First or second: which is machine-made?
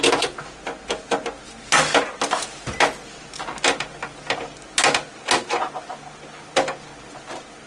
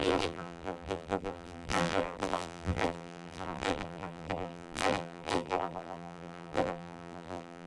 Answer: second